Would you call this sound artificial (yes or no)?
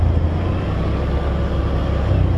no